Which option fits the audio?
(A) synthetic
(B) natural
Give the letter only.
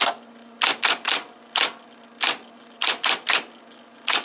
B